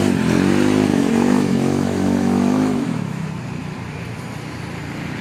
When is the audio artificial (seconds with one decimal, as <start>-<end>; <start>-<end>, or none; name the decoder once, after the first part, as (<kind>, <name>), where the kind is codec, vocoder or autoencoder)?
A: 0.9-3.3 (autoencoder, DAC-VAE)